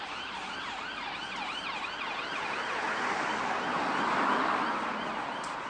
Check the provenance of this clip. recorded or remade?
recorded